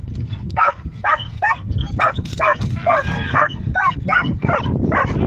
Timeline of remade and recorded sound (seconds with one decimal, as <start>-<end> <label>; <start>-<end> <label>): 0.0-4.5 remade; 4.5-5.3 recorded